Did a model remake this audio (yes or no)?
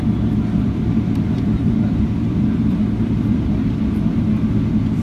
yes